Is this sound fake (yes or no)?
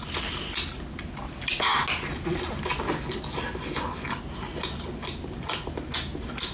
no